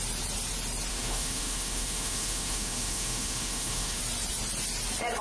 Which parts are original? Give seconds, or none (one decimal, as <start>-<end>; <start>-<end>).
0.0-0.9; 4.0-5.2